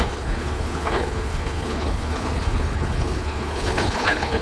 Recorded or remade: remade